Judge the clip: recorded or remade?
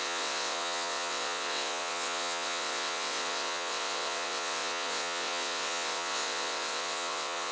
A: remade